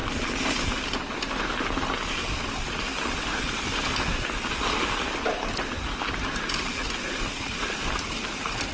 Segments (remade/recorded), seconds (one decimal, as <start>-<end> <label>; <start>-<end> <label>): 0.0-8.7 recorded